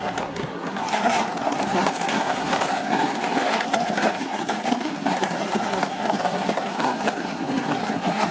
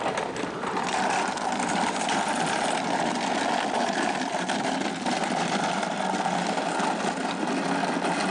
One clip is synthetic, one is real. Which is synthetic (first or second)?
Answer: first